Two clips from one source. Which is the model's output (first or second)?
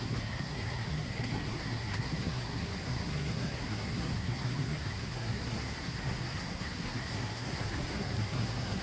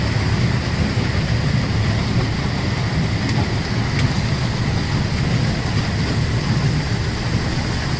first